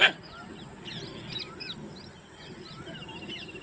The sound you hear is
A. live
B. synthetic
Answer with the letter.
A